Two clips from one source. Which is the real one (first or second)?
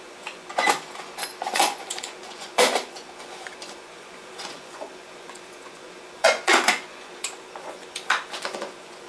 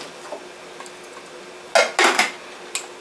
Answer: second